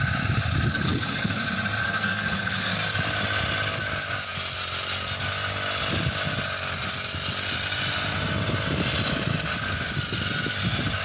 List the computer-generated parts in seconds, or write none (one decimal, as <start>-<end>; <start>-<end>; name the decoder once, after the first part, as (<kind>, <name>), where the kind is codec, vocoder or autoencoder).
0.7-1.4 (codec, SNAC); 1.8-2.7